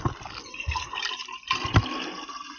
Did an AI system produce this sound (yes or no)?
no